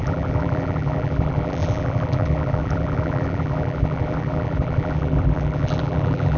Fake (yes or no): yes